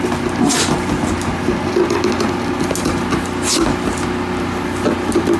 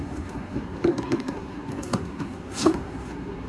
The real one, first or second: first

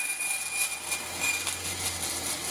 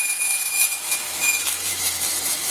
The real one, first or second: first